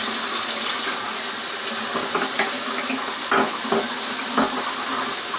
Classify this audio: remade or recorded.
recorded